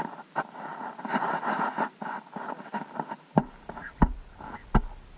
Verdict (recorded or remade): recorded